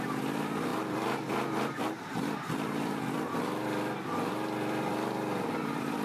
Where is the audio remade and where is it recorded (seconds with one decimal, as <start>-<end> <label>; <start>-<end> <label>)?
0.0-6.0 remade